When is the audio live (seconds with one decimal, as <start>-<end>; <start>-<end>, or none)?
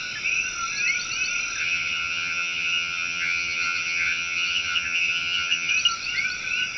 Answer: 0.0-1.6; 5.7-6.8